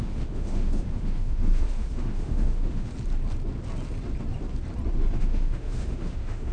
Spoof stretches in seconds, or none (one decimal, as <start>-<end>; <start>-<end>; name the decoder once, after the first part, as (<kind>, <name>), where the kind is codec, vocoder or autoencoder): 0.0-2.9 (autoencoder, DAC-VAE); 5.2-6.5